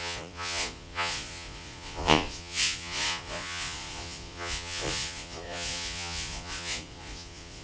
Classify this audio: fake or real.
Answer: fake